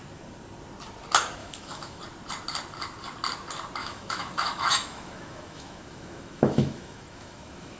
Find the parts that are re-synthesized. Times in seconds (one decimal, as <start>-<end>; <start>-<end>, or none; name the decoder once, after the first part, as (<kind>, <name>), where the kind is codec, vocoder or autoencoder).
1.4-2.0 (autoencoder, DAC-VAE); 3.8-7.8